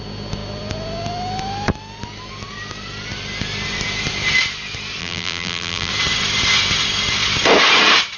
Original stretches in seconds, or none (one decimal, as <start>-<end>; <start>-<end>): 0.0-5.0; 5.9-8.2